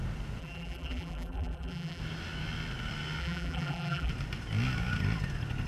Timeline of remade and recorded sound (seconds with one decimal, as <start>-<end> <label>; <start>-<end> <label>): 0.0-0.4 recorded; 0.4-2.0 remade; 2.0-3.2 recorded; 3.2-4.1 remade; 4.1-5.7 recorded